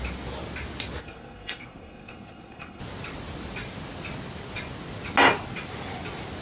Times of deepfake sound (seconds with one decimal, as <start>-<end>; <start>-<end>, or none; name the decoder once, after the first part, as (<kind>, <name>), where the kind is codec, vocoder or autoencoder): 1.0-2.8 (codec, SNAC)